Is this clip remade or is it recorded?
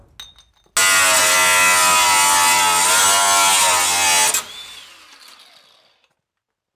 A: recorded